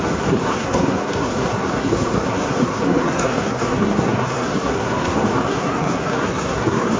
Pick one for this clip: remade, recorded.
remade